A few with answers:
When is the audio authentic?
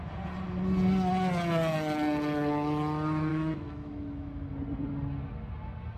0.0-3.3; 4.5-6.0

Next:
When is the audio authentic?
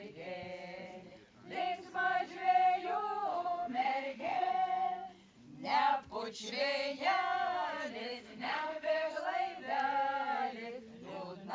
0.0-3.3; 4.5-8.0; 9.1-11.5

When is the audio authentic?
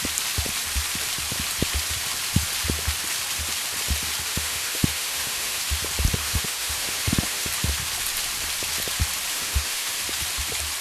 0.0-4.3; 5.6-6.2; 7.5-9.3; 10.0-10.8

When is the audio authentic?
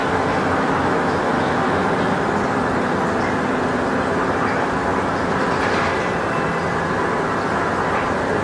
2.1-8.4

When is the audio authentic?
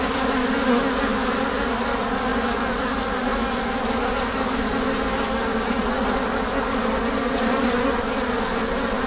0.0-9.1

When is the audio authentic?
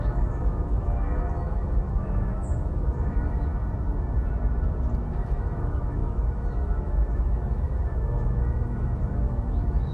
3.5-5.1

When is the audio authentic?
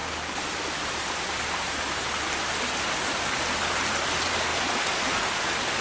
0.0-5.8